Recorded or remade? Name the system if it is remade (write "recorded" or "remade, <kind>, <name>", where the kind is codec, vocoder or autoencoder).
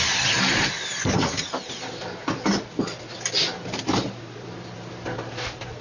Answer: recorded